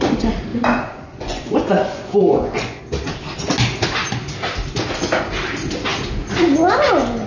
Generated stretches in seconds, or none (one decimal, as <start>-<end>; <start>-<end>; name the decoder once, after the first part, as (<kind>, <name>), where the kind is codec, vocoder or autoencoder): 0.5-2.8 (vocoder, Vocos)